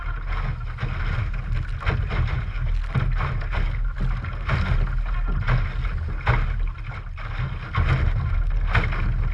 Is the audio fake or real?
real